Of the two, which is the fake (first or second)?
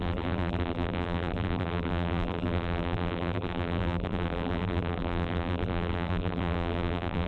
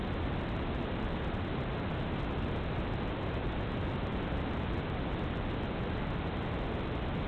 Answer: first